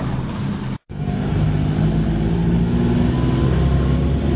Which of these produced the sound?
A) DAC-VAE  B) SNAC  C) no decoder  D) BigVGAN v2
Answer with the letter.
C